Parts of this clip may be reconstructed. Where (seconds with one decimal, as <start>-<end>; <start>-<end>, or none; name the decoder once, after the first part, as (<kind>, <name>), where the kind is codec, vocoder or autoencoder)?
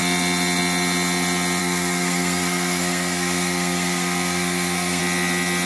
1.6-5.0 (codec, SNAC)